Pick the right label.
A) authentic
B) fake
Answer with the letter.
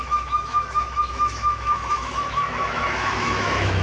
B